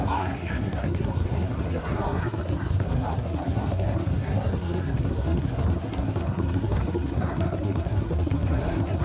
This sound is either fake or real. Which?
fake